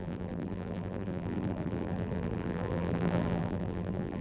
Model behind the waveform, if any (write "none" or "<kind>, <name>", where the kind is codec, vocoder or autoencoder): vocoder, BigVGAN v2